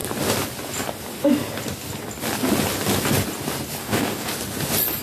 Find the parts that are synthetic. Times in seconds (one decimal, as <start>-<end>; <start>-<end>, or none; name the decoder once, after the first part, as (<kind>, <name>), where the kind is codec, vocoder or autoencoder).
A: 3.8-4.3 (codec, DAC)